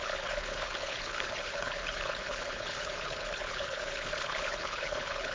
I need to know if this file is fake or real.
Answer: fake